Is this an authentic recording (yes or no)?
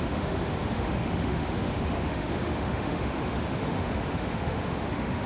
no